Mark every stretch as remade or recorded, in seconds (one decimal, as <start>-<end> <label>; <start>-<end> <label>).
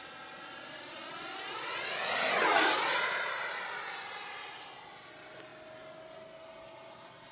0.0-7.3 recorded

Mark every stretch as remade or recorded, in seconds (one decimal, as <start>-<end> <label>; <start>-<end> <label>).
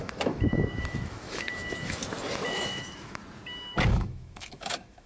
0.0-2.0 remade; 2.0-2.5 recorded; 2.5-3.2 remade; 3.2-3.9 recorded; 3.9-5.1 remade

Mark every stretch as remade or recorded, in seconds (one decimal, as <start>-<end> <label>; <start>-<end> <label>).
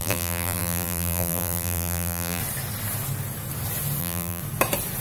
0.0-2.4 remade; 2.4-4.0 recorded; 4.0-4.4 remade; 4.4-5.0 recorded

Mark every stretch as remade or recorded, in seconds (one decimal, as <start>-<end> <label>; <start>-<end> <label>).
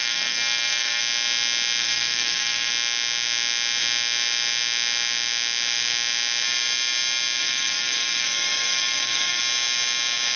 0.0-1.0 remade; 1.0-1.8 recorded; 1.8-2.7 remade; 2.7-7.4 recorded; 7.4-9.4 remade; 9.4-10.4 recorded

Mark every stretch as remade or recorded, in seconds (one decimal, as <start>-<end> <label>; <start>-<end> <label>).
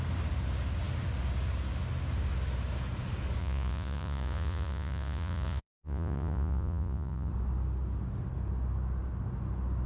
0.0-3.4 recorded; 3.4-7.3 remade; 7.3-9.9 recorded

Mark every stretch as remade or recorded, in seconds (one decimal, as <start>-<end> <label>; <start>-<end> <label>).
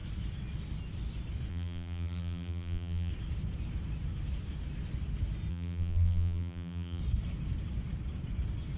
0.0-1.5 recorded; 1.5-3.1 remade; 3.1-5.5 recorded; 5.5-7.0 remade; 7.0-8.8 recorded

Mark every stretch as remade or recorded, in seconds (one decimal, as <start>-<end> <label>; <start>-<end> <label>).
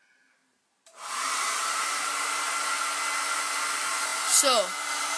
0.0-0.4 recorded; 0.4-2.5 remade; 2.5-5.2 recorded